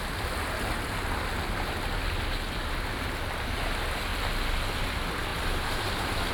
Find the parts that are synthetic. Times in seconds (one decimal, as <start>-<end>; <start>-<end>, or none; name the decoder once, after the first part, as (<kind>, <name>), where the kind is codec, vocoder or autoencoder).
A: 5.3-6.3 (vocoder, BigVGAN v2)